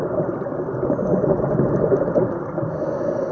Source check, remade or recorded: recorded